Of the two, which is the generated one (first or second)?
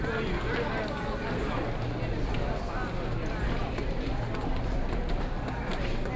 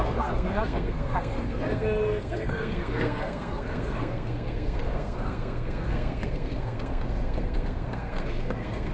second